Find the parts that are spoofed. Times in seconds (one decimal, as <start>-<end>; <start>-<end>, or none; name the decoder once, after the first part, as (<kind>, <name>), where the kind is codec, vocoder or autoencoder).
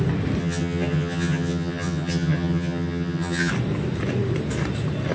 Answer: 0.4-3.5 (vocoder, HiFi-GAN)